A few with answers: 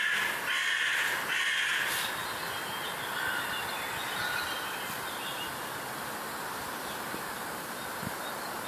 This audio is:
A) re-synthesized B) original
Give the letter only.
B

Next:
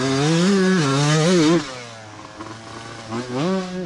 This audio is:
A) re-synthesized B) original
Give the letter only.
B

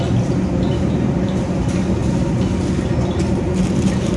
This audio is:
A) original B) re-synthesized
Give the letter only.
A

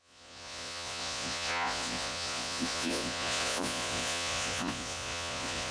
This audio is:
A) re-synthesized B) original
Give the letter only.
A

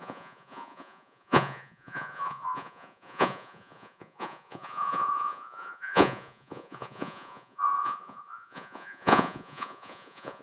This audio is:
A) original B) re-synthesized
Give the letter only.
B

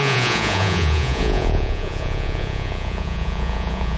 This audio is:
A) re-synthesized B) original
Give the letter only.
A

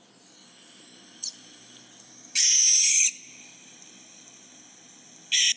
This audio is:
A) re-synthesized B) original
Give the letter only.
B